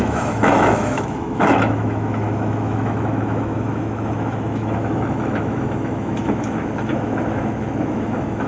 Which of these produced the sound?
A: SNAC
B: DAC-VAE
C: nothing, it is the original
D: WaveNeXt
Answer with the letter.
B